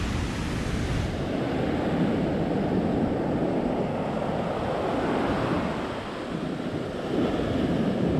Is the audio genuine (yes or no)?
yes